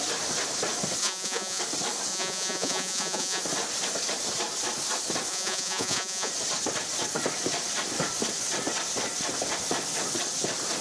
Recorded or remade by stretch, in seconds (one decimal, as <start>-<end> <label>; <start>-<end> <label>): 0.0-1.0 recorded; 1.0-1.6 remade; 1.6-2.1 recorded; 2.1-3.4 remade; 3.4-5.3 recorded; 5.3-6.3 remade; 6.3-10.8 recorded